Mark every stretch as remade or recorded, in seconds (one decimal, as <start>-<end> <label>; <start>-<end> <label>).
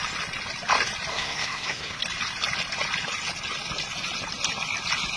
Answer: 0.0-1.1 recorded; 1.1-2.0 remade; 2.0-5.2 recorded